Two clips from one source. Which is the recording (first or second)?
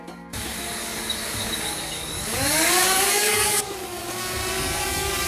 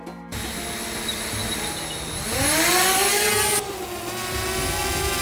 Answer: second